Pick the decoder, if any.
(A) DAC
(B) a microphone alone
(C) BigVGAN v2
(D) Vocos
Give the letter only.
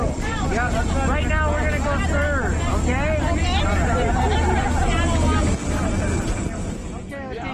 B